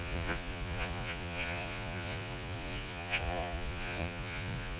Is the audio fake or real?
fake